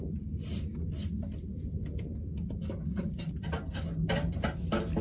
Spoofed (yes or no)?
no